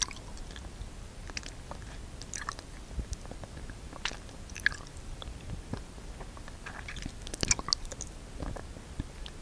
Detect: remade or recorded recorded